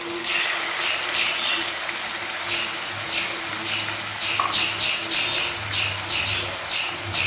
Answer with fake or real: real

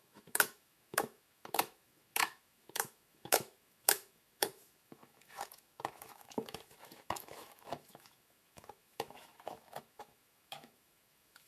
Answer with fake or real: fake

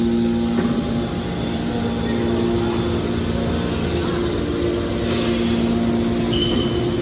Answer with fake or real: real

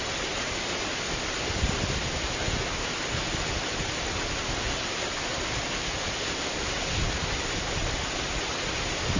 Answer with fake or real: real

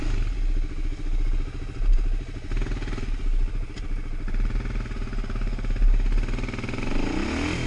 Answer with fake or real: real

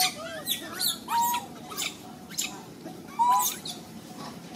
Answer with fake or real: fake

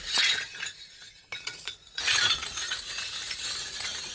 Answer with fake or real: fake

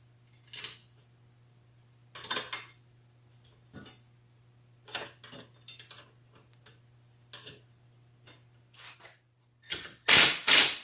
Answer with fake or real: real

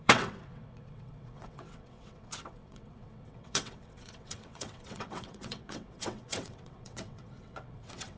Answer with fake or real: fake